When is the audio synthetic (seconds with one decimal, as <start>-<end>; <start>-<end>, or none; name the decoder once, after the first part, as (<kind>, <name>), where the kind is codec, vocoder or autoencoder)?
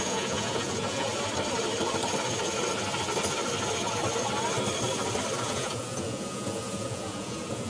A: 0.0-1.1 (vocoder, Vocos); 5.4-7.7